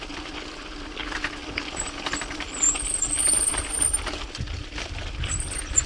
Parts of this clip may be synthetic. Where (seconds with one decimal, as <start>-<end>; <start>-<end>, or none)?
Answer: none